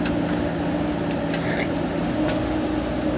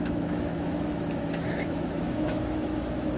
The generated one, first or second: second